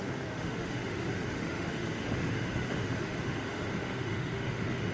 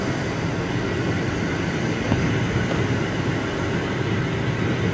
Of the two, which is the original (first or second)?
second